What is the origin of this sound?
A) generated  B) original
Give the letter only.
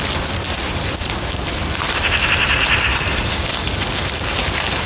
B